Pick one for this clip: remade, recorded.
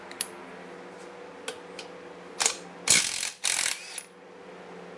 recorded